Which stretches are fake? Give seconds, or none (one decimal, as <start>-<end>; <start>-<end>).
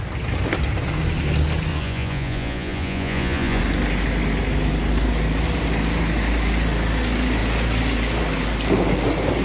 1.7-3.6